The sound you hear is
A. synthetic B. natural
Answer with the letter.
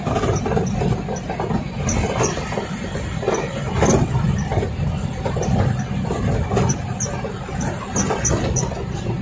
B